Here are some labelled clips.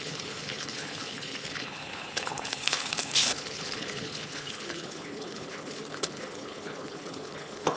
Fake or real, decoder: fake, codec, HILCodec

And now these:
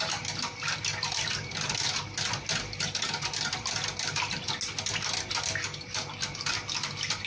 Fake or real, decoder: real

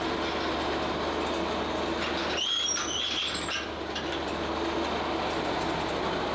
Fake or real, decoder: real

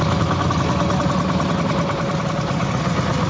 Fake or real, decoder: real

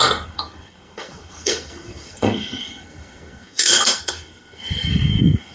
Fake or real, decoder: fake, codec, SNAC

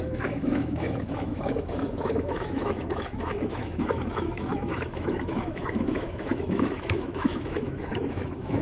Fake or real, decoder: fake, autoencoder, DAC-VAE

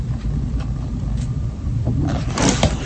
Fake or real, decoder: fake, vocoder, BigVGAN v2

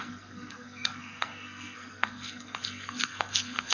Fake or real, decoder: fake, codec, SNAC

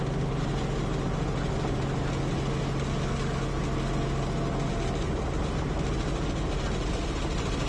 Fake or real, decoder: real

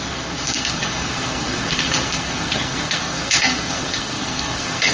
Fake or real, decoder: fake, codec, SNAC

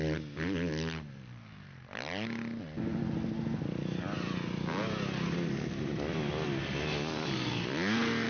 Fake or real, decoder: real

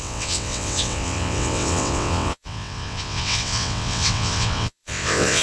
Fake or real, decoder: fake, vocoder, WaveNeXt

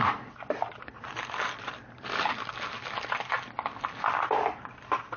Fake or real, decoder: real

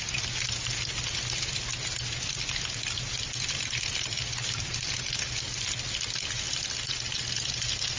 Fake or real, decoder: real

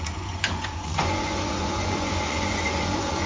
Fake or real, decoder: fake, vocoder, Vocos